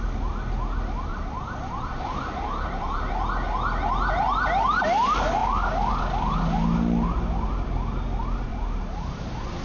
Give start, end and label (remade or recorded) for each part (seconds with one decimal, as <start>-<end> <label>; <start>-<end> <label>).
0.0-1.1 recorded; 1.1-3.3 remade; 3.3-8.5 recorded; 8.5-9.2 remade; 9.2-9.6 recorded